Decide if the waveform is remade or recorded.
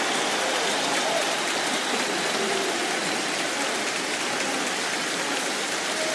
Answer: recorded